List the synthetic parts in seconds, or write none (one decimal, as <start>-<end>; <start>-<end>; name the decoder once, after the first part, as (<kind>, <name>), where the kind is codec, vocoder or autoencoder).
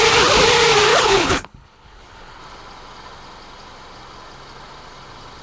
0.9-2.4 (codec, HILCodec)